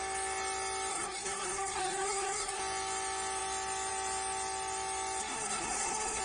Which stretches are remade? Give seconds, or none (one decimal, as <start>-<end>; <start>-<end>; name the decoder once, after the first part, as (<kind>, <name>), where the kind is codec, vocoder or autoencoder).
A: 0.9-2.6 (codec, SNAC); 5.2-6.2

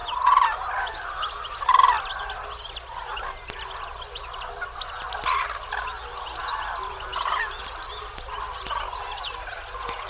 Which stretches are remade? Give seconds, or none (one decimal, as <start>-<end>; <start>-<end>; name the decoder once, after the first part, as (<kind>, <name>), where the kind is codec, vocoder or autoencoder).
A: 0.0-1.6 (vocoder, BigVGAN v2)